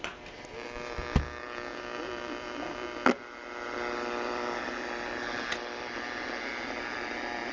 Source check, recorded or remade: remade